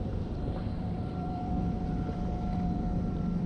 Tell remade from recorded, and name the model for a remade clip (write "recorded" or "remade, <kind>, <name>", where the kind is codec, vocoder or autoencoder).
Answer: remade, vocoder, BigVGAN v2